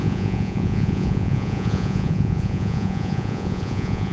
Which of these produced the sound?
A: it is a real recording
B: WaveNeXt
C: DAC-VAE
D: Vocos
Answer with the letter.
D